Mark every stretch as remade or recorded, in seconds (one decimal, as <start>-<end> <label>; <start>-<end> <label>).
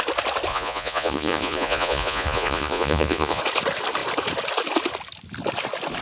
0.0-0.5 recorded; 0.5-3.4 remade; 3.4-6.0 recorded